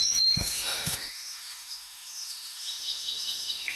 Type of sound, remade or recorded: remade